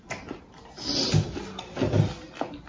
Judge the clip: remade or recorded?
recorded